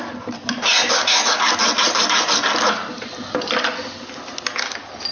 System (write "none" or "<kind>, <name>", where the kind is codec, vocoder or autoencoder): none